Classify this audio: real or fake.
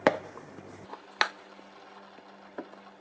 real